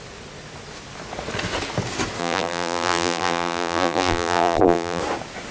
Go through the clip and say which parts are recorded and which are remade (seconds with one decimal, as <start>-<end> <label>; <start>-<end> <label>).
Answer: 0.0-2.2 recorded; 2.2-5.0 remade; 5.0-5.5 recorded